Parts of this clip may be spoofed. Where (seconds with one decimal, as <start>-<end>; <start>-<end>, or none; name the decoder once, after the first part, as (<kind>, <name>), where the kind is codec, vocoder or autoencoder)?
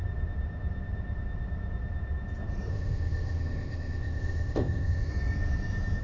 2.7-5.1 (codec, ZipCodec)